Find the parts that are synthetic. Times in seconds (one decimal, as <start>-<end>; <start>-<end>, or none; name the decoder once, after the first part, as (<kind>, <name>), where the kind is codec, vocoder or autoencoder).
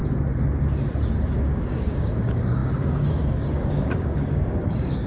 1.3-5.1 (codec, DAC)